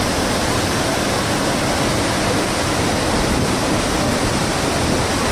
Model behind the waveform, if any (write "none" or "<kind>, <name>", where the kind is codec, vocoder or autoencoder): none